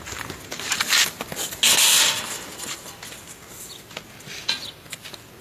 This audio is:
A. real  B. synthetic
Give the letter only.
A